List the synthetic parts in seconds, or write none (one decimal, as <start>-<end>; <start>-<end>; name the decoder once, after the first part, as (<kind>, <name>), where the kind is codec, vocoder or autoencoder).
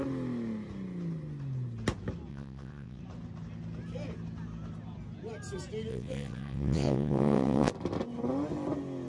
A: 2.3-3.0 (vocoder, WaveNeXt); 5.9-7.7